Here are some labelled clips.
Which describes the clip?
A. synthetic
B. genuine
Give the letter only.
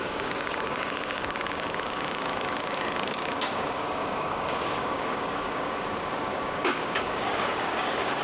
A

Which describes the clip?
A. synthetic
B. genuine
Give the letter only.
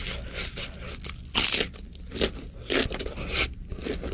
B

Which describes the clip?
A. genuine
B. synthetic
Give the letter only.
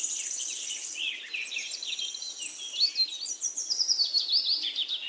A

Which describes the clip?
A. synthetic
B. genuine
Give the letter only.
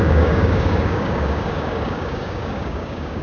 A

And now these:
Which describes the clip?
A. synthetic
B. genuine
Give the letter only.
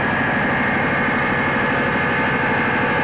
B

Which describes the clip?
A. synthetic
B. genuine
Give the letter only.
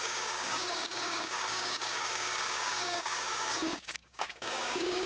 A